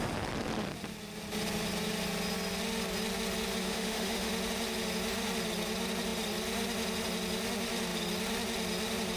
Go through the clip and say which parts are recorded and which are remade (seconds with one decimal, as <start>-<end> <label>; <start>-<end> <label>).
0.0-3.6 recorded; 3.6-4.3 remade; 4.3-9.2 recorded